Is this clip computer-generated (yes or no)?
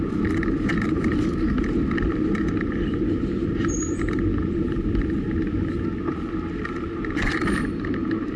yes